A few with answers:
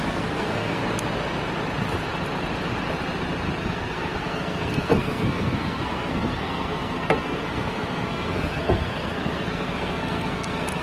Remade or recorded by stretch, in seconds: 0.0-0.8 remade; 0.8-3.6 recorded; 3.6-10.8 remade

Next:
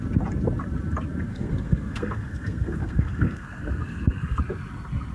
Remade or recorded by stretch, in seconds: 0.0-1.3 recorded; 1.3-4.4 remade; 4.4-5.1 recorded

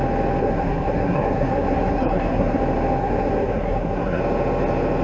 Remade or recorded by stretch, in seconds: 0.0-0.4 recorded; 0.4-2.6 remade; 2.6-3.0 recorded; 3.0-4.2 remade; 4.2-5.0 recorded